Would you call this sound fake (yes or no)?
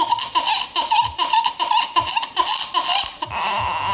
no